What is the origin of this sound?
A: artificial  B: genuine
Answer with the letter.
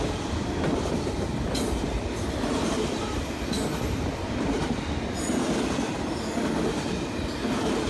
B